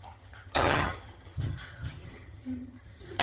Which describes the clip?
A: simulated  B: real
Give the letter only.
A